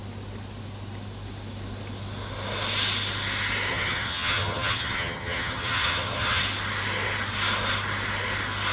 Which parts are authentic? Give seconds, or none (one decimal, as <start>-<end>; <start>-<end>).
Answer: 0.0-3.7; 6.4-8.7